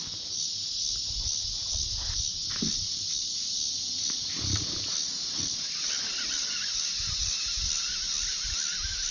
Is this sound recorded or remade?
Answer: recorded